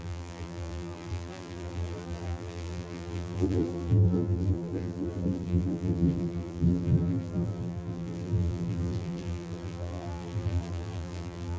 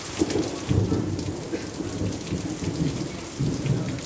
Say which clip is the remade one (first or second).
first